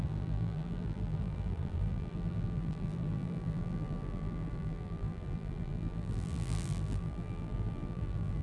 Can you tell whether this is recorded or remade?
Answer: remade